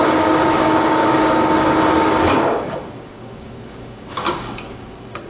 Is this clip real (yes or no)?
no